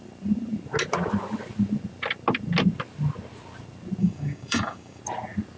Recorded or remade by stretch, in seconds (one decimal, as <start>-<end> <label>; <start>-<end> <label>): 0.0-4.0 recorded; 4.0-5.0 remade; 5.0-5.6 recorded